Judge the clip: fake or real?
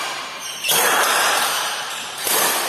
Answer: fake